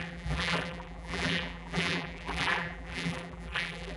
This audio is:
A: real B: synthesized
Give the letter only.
B